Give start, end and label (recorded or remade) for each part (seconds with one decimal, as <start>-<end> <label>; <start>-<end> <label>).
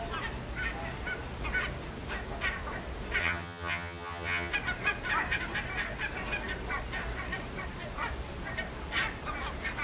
0.0-3.2 recorded; 3.2-4.5 remade; 4.5-9.8 recorded